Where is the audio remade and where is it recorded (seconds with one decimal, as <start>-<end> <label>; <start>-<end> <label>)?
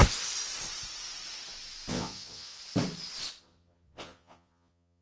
0.0-1.9 recorded; 1.9-2.6 remade; 2.6-3.4 recorded; 3.4-5.0 remade